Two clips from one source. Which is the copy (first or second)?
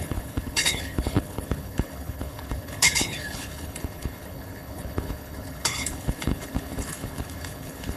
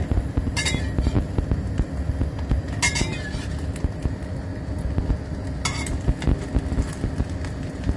first